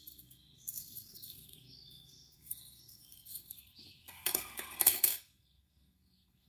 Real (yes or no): no